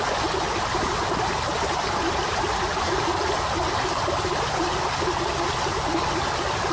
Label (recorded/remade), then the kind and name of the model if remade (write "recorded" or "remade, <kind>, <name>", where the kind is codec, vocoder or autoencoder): recorded